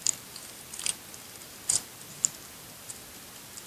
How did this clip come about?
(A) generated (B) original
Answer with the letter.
B